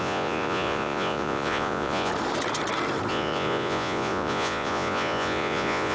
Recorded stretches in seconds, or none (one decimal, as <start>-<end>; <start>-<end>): 2.1-3.1